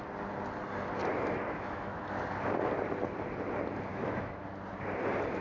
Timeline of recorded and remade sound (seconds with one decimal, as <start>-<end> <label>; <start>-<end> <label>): 0.0-1.1 recorded; 1.1-2.2 remade; 2.2-3.9 recorded; 3.9-4.5 remade; 4.5-5.4 recorded

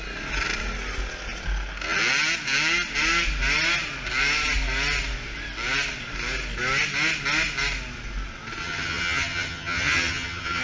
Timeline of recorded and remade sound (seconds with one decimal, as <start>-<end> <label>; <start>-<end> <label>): 0.0-8.6 recorded; 8.6-10.6 remade